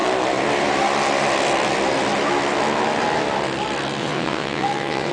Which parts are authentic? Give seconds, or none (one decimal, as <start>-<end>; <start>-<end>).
0.0-4.0